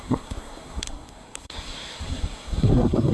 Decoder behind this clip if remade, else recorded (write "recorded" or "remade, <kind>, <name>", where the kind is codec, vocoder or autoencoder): remade, codec, SNAC